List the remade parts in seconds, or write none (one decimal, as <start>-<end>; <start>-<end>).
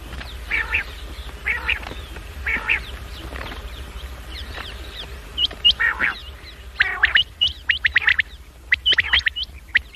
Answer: 0.0-6.2; 7.2-10.0